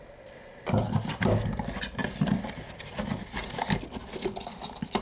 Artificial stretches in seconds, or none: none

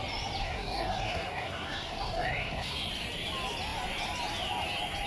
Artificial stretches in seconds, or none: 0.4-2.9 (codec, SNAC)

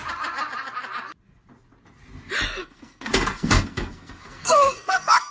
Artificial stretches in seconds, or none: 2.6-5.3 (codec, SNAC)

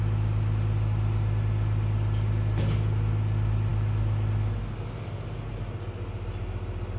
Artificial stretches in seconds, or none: none

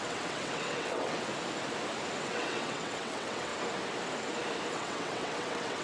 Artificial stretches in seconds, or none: 0.0-1.3 (vocoder, WaveNeXt); 2.2-3.5; 4.7-5.8